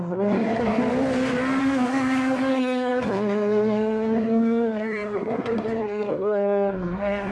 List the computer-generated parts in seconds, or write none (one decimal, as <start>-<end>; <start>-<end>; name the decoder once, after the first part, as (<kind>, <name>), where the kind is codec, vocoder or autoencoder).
0.0-0.8 (codec, SNAC); 1.6-7.3